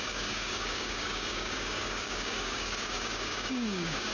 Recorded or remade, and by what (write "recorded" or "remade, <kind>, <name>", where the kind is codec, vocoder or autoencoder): remade, codec, DAC